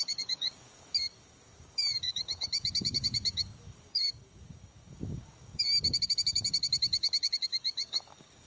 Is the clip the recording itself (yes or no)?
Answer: no